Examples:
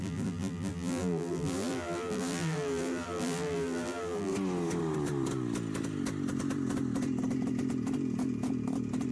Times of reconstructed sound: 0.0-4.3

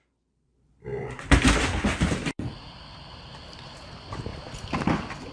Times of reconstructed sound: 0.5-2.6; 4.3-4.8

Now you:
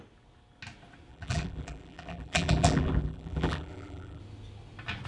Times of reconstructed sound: 1.1-4.2

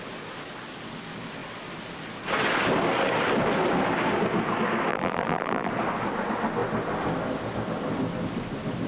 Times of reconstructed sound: 4.9-5.7